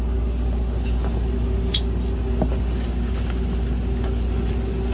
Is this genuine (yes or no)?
yes